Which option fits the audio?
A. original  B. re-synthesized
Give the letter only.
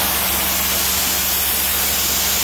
A